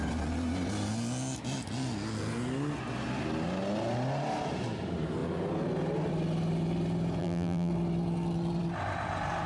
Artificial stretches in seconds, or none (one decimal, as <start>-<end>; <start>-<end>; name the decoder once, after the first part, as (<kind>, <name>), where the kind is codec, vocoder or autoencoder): 7.2-7.7 (vocoder, BigVGAN v2)